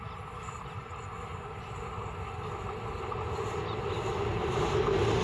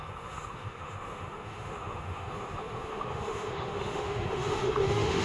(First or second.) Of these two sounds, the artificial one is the second